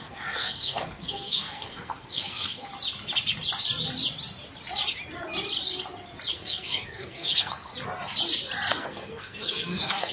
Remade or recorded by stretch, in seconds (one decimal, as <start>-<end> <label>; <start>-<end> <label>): 0.0-2.7 remade; 2.7-6.3 recorded; 6.3-7.7 remade; 7.7-8.7 recorded; 8.7-10.1 remade